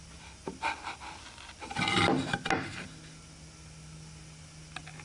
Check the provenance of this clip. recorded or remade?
recorded